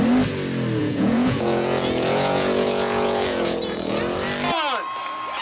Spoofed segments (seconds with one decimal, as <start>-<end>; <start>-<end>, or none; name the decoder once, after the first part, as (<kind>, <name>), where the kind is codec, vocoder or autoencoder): 0.8-4.0 (vocoder, Vocos)